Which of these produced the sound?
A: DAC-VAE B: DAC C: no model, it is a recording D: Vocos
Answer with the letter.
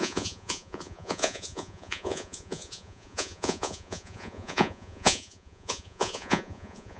D